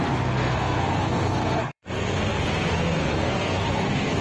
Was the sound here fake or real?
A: fake